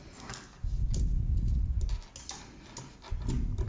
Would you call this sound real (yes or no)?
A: yes